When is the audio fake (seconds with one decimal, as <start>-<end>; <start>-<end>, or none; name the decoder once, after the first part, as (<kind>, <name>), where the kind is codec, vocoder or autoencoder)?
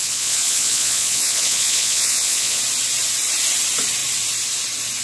0.0-2.6 (vocoder, Vocos)